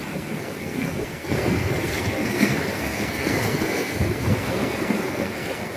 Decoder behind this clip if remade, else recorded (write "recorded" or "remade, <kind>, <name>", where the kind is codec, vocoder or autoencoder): remade, codec, SNAC